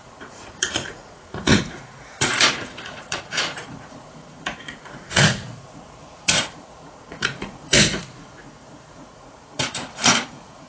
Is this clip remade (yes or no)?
yes